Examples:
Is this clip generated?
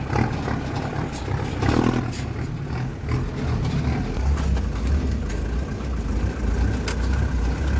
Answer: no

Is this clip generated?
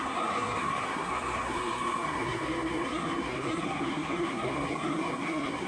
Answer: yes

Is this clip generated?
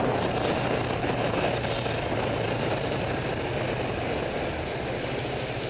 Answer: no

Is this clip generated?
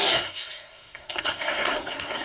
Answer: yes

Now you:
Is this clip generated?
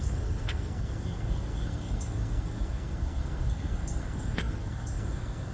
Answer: yes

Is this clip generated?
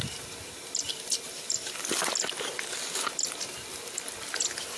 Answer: no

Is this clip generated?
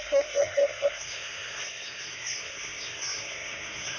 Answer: yes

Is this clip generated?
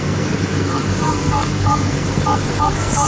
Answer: yes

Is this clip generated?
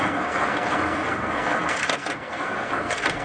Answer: yes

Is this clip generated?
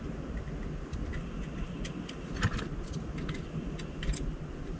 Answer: no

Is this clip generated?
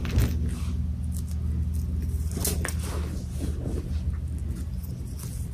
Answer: no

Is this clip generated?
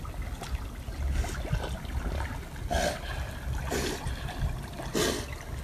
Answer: no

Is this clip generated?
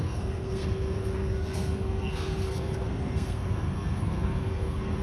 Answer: yes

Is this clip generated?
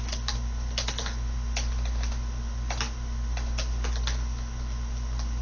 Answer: no